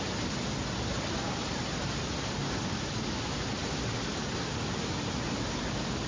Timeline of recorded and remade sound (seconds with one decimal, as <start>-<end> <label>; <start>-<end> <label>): 0.0-6.1 recorded